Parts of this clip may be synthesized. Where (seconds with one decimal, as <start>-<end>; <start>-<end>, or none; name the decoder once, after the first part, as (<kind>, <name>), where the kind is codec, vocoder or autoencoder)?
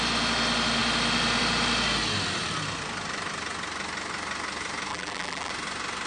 4.9-5.5 (vocoder, BigVGAN v2)